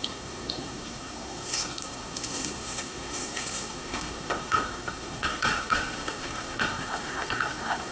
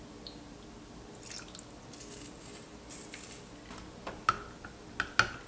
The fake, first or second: first